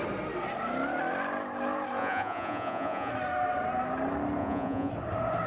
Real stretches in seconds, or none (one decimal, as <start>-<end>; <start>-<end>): 0.0-2.0; 3.1-4.4; 4.9-5.5